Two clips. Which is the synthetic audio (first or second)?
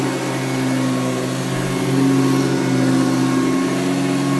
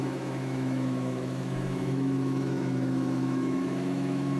second